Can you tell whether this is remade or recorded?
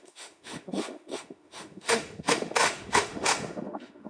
remade